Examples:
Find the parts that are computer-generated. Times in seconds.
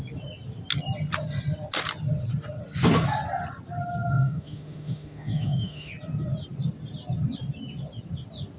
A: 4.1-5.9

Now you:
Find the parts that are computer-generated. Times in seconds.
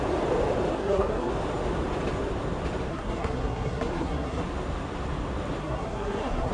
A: 0.7-1.3; 2.9-4.4; 5.6-6.5